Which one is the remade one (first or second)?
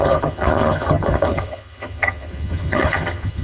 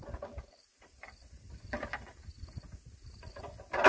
first